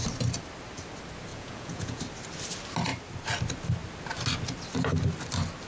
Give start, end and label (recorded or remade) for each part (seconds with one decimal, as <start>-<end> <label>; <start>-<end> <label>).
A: 0.0-1.3 recorded; 1.3-2.0 remade; 2.0-5.7 recorded